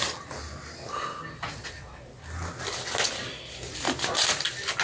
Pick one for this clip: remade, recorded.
recorded